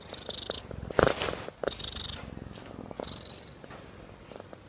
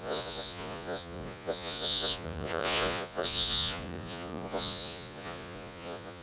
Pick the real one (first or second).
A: first